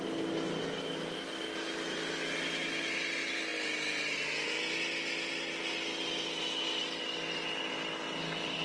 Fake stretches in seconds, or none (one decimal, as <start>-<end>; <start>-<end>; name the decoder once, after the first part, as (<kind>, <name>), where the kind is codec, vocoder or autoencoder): none